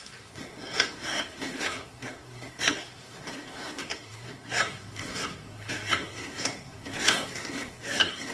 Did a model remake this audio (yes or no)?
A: yes